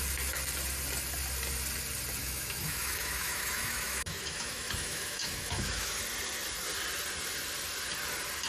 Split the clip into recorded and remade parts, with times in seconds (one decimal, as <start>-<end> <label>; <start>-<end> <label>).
0.0-2.2 recorded; 2.2-6.0 remade; 6.0-8.5 recorded